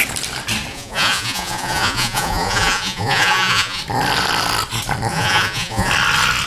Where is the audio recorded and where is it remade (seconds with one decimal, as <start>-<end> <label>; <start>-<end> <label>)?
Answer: 0.0-0.7 recorded; 0.7-3.8 remade; 3.8-5.1 recorded; 5.1-5.9 remade; 5.9-6.5 recorded